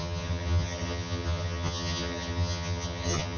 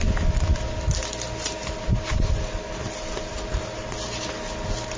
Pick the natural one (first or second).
second